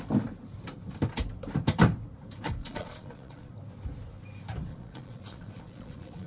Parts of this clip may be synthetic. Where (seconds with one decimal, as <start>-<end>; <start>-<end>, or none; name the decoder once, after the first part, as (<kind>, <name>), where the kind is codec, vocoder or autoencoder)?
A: 2.6-3.5 (vocoder, Vocos); 4.7-6.3